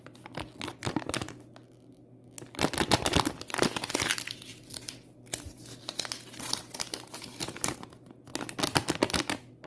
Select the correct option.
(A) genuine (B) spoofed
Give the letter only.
A